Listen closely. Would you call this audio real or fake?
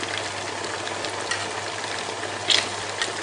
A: real